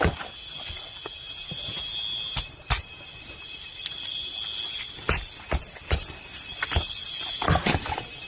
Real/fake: real